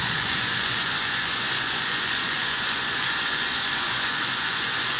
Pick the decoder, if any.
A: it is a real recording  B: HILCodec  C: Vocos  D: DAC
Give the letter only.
C